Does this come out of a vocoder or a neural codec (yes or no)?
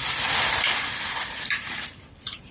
yes